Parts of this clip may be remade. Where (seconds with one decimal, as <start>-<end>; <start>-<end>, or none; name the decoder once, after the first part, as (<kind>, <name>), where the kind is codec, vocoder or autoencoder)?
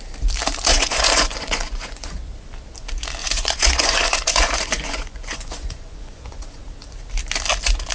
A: 0.7-2.3 (vocoder, Vocos); 3.2-6.6